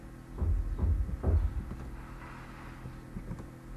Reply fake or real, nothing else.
real